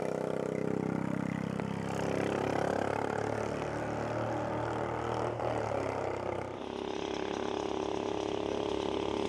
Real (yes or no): yes